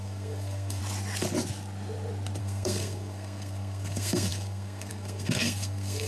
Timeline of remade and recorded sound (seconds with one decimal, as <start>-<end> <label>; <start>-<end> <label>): 0.0-0.8 remade; 0.8-2.4 recorded; 2.4-6.1 remade